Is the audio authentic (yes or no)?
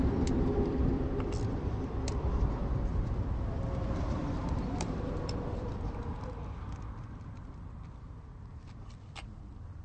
no